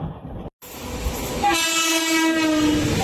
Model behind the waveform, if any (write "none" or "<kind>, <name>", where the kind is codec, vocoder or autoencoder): none